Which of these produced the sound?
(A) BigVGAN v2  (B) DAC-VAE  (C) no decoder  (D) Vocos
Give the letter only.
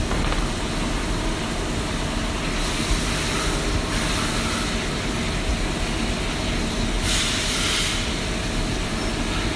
C